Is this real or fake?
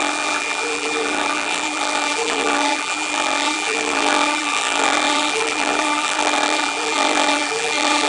fake